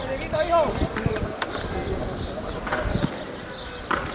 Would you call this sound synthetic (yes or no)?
no